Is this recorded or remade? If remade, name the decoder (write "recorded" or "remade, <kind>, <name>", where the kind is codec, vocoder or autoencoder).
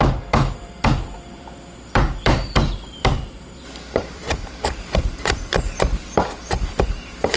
remade, vocoder, BigVGAN v2